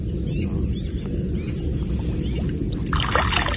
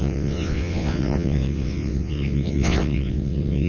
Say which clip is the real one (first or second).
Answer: first